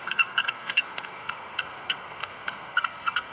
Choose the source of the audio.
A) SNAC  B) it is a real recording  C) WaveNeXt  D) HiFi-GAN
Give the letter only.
A